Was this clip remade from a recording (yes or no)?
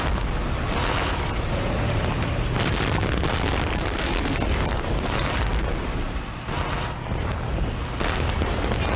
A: no